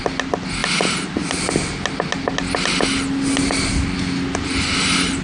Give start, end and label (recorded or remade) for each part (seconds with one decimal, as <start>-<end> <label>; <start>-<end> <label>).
0.0-5.2 recorded

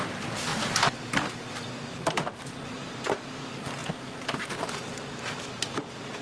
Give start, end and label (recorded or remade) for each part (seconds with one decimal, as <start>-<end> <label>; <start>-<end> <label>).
0.0-6.2 recorded

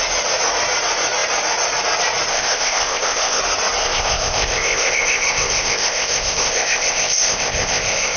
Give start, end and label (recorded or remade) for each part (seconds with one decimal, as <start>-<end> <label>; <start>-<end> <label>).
0.0-2.3 recorded; 2.3-3.4 remade; 3.4-3.8 recorded; 3.8-8.2 remade

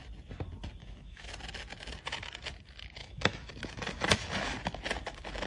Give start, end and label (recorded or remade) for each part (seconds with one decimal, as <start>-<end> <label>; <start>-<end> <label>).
0.0-0.8 recorded; 0.8-1.3 remade; 1.3-3.0 recorded; 3.0-3.5 remade; 3.5-5.5 recorded

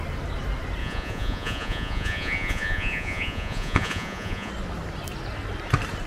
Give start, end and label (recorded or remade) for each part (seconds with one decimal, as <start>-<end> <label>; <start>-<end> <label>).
0.0-0.8 recorded; 0.8-4.5 remade; 4.5-6.1 recorded

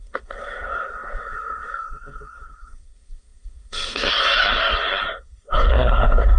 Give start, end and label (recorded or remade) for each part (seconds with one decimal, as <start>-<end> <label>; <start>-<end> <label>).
0.0-6.4 remade

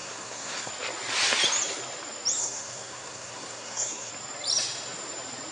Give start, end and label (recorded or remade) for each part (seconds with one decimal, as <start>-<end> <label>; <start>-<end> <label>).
0.0-0.7 remade; 0.7-2.4 recorded; 2.4-4.1 remade; 4.1-5.5 recorded